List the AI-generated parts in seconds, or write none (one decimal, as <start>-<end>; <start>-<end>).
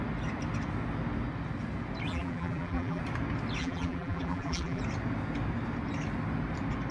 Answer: 2.1-3.0; 3.6-4.8